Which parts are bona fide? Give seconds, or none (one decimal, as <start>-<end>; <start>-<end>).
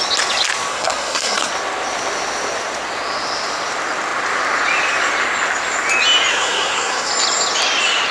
0.0-0.7; 1.5-6.3; 7.1-8.1